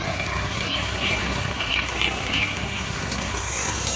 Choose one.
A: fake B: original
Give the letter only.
A